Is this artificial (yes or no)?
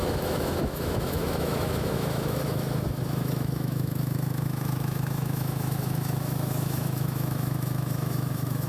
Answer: yes